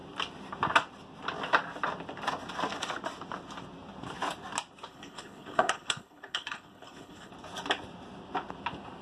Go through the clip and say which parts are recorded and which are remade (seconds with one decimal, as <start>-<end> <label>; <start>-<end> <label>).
0.0-4.9 recorded; 4.9-7.3 remade; 7.3-9.0 recorded